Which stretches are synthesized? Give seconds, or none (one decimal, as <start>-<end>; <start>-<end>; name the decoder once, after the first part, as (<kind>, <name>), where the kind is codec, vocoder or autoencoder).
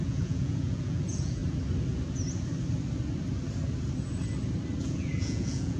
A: 0.0-1.4 (vocoder, Vocos); 4.8-5.8